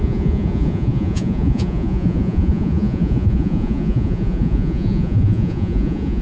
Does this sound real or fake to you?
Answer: fake